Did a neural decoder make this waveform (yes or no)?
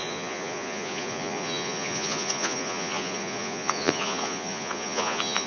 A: yes